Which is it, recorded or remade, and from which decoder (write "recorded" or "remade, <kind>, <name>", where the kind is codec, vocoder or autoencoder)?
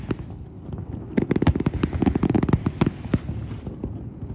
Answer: recorded